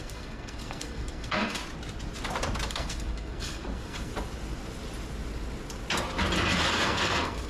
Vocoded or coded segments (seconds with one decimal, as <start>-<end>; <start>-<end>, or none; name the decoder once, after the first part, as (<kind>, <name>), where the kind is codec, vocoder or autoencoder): 0.0-1.6 (codec, SNAC); 2.7-4.1; 6.7-7.5